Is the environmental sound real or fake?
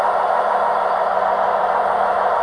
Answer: real